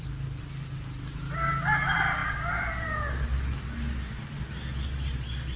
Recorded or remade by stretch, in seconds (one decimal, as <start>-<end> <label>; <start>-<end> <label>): 0.0-5.6 recorded